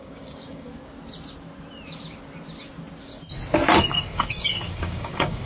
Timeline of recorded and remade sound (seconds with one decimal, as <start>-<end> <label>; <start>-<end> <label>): 0.0-0.7 remade; 0.7-4.0 recorded; 4.0-5.5 remade